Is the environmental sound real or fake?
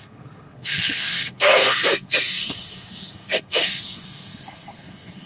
fake